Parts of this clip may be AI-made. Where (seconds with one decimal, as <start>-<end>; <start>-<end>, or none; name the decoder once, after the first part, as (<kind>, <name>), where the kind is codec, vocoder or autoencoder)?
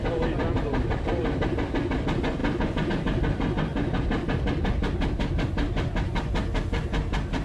none